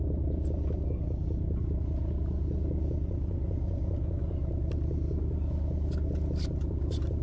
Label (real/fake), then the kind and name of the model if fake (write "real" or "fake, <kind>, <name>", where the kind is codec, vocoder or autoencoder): real